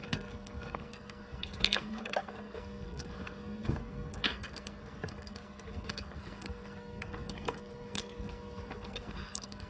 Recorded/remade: remade